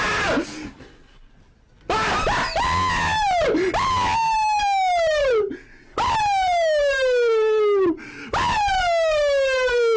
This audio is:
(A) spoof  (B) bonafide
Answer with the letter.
B